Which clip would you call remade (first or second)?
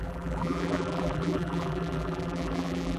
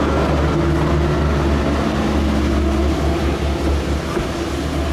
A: first